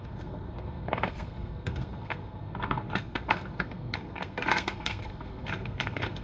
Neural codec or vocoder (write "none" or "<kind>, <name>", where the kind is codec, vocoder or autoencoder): codec, SNAC